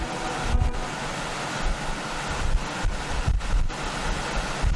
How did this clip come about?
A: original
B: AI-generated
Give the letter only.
A